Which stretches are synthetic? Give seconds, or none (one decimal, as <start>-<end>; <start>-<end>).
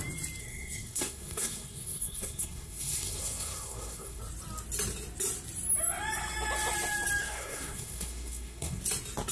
0.4-4.2; 7.2-8.8